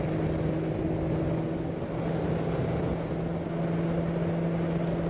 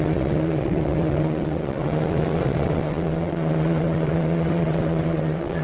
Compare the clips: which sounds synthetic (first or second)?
second